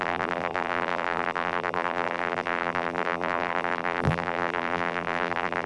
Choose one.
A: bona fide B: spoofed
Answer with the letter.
B